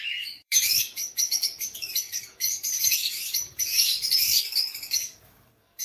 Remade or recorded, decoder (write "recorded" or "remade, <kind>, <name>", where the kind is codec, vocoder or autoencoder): remade, codec, DAC